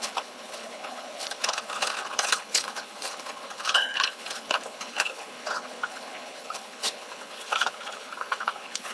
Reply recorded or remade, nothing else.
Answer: remade